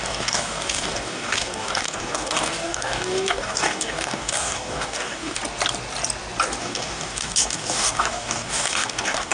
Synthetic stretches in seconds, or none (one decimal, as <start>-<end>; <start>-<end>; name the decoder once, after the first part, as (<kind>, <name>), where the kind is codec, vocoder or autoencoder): 0.0-5.4 (codec, DAC); 6.6-9.3